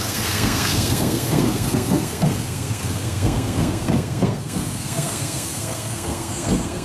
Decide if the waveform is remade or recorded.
remade